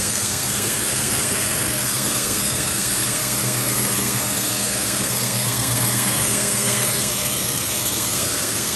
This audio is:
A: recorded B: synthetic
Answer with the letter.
B